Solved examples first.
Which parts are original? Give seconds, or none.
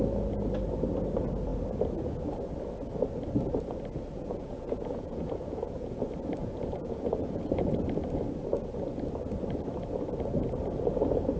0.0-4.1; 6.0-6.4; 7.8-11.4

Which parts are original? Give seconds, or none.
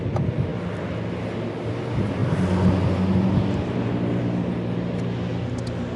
0.0-6.0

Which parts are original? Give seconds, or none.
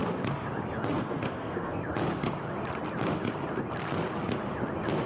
0.0-1.0; 1.8-5.1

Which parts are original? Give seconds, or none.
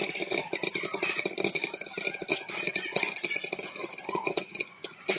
0.0-2.3